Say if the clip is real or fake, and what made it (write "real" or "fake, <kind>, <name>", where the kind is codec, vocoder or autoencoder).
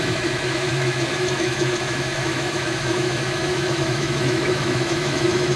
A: fake, autoencoder, DAC-VAE